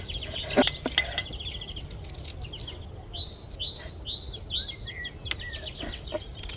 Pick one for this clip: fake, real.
real